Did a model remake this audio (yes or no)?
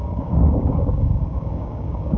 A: yes